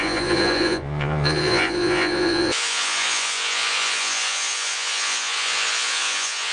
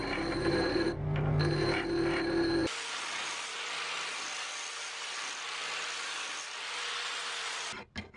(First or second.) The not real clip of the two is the first